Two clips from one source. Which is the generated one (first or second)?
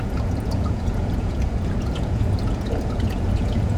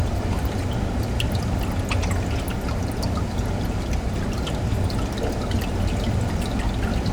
first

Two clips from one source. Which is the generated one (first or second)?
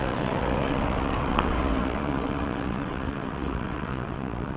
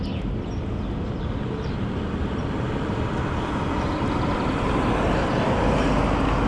first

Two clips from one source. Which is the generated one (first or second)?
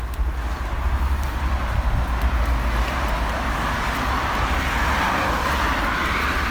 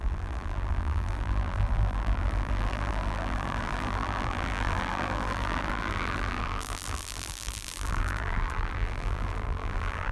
second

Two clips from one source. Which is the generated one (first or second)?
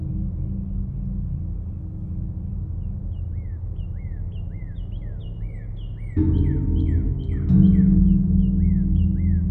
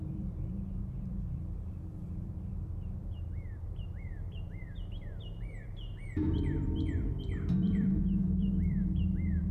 second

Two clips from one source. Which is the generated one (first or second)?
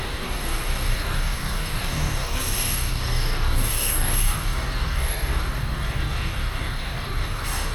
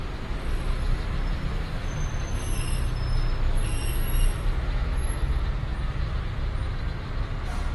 first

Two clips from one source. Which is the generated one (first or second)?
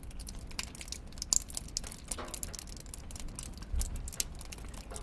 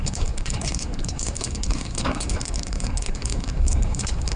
second